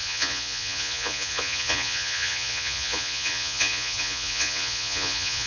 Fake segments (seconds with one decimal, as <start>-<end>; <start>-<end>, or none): 0.0-5.5